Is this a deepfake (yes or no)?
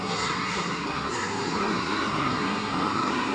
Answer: yes